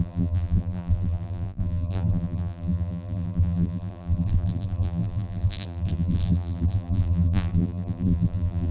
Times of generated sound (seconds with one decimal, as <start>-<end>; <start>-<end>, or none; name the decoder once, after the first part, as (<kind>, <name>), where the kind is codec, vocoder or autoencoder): 0.0-8.7 (vocoder, BigVGAN v2)